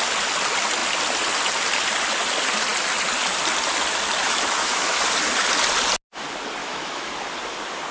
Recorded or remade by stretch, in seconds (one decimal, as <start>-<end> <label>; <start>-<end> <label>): 0.0-4.2 recorded; 4.2-5.0 remade; 5.0-6.6 recorded; 6.6-7.1 remade; 7.1-7.9 recorded